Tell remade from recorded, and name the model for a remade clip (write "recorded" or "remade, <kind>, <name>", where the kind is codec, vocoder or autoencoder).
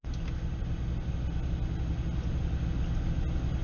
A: recorded